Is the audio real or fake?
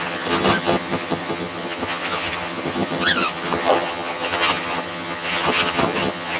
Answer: fake